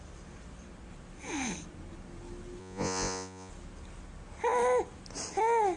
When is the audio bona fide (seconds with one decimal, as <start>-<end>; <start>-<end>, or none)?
0.0-2.6; 3.5-5.8